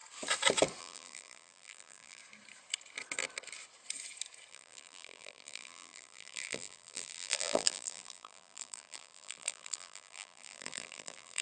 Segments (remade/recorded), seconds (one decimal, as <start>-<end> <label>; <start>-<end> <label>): 0.0-0.8 recorded; 0.8-2.2 remade; 2.2-4.5 recorded; 4.5-11.4 remade